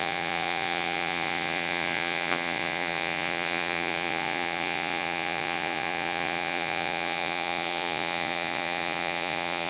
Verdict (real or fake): fake